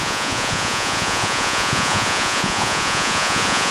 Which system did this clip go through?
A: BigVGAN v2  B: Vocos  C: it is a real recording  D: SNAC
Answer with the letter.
B